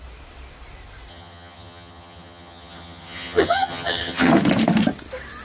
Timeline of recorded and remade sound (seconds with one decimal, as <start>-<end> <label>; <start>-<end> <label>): 0.0-1.1 recorded; 1.1-4.3 remade; 4.3-5.4 recorded